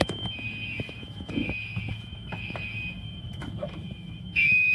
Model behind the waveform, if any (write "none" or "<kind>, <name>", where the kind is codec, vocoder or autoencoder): autoencoder, DAC-VAE